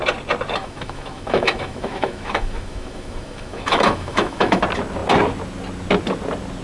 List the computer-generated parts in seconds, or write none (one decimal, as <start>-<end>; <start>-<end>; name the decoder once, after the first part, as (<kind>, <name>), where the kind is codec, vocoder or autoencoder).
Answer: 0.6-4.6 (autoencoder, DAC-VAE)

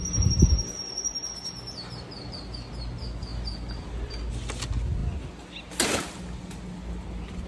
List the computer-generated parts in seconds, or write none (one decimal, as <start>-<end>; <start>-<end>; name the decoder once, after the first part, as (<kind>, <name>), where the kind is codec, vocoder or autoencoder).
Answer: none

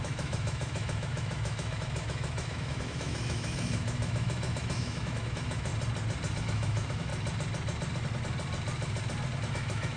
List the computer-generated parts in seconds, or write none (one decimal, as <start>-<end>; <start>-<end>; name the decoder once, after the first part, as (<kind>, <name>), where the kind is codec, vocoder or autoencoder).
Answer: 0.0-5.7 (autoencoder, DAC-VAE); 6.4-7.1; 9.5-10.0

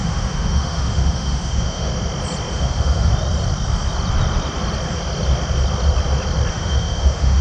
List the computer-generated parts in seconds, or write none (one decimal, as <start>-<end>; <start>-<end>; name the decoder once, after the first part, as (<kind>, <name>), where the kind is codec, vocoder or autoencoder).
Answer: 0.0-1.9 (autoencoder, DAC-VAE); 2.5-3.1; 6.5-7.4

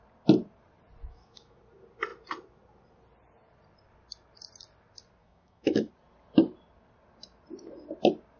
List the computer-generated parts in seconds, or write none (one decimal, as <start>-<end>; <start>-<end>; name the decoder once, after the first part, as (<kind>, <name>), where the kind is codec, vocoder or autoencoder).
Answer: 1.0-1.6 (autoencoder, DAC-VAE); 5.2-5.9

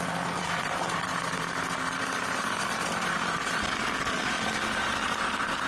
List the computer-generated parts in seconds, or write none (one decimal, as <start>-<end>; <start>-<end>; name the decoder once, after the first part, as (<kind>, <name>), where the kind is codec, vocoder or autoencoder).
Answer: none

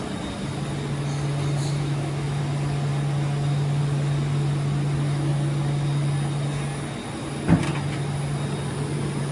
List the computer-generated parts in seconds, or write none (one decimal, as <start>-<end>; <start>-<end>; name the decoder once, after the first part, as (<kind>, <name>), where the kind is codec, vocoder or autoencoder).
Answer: 1.6-2.4 (autoencoder, DAC-VAE)

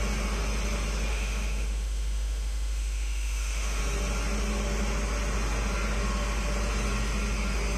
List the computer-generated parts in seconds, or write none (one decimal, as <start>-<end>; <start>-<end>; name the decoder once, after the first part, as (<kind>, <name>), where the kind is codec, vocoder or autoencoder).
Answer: 1.1-3.8 (autoencoder, DAC-VAE)